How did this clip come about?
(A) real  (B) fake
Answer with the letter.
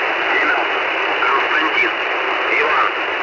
B